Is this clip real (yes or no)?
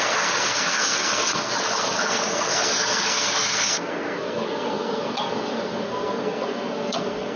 no